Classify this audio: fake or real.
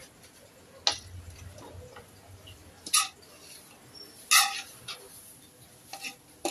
real